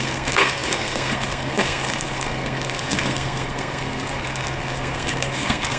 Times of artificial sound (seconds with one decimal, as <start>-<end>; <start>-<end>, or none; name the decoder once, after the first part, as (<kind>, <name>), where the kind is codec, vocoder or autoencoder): 0.0-5.8 (codec, SNAC)